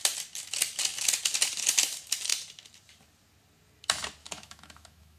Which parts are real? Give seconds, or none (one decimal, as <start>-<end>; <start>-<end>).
0.0-4.2